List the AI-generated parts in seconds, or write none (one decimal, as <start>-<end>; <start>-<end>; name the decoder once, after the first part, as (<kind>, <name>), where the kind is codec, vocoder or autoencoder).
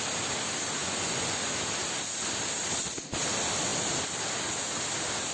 0.8-1.5 (vocoder, Vocos)